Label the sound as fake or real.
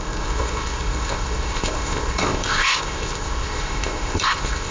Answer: fake